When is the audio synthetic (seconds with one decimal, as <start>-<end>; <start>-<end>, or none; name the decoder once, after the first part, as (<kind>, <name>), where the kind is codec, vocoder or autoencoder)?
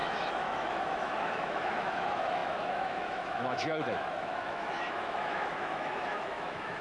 0.0-6.8 (autoencoder, DAC-VAE)